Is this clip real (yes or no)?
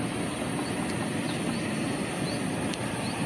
yes